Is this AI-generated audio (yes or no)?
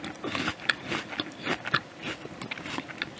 no